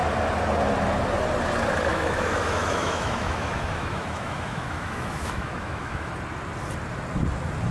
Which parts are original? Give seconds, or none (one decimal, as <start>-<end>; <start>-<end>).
0.0-1.9; 6.1-7.7